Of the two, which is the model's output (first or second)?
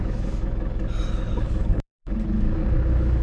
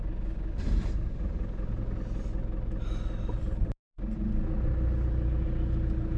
first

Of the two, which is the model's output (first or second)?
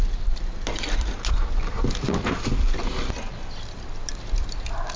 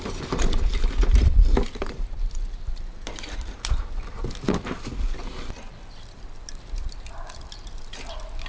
second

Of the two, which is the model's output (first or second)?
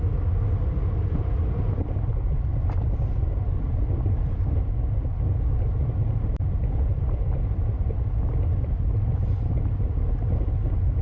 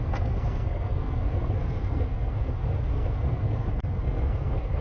second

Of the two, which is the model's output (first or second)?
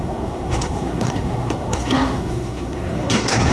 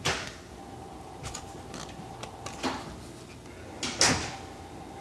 first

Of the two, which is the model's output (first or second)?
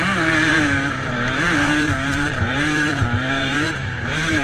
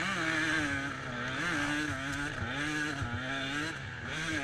first